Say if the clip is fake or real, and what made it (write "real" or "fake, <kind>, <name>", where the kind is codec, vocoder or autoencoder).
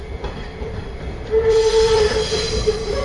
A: fake, vocoder, BigVGAN v2